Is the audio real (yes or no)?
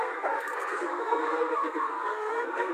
no